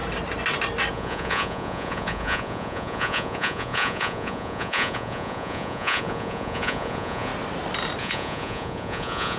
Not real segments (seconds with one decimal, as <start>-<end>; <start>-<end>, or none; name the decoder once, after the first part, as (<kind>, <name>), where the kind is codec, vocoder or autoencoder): 0.9-7.3 (vocoder, Vocos); 8.0-9.4